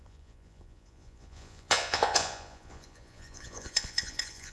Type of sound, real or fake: fake